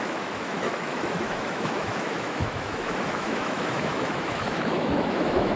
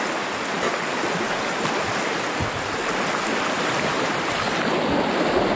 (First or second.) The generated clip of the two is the first